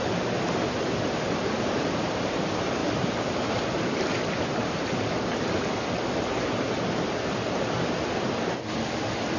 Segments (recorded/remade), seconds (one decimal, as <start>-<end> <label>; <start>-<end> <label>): 0.0-1.4 recorded; 1.4-2.4 remade; 2.4-2.8 recorded; 2.8-3.7 remade; 3.7-9.4 recorded